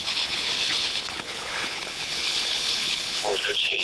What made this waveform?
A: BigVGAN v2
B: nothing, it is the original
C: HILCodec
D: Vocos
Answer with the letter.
C